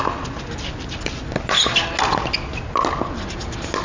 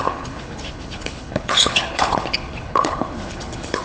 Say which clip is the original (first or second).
first